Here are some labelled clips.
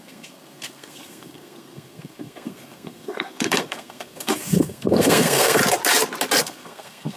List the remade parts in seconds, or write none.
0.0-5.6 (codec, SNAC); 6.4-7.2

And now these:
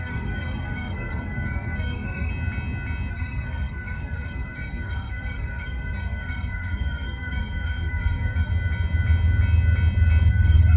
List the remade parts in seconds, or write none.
0.0-2.3 (codec, SNAC); 3.1-8.5; 10.3-10.8

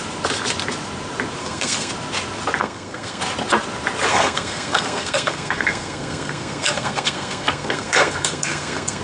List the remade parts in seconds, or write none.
1.4-1.9 (codec, SNAC); 2.6-3.2; 4.1-9.0

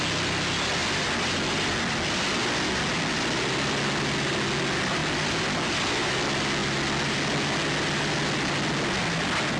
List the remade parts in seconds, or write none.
none

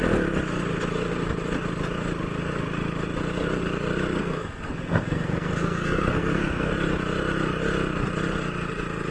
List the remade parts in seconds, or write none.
4.2-6.7 (codec, SNAC)

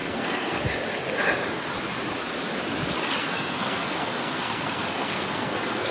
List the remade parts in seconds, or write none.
0.0-0.6 (codec, SNAC); 3.2-5.9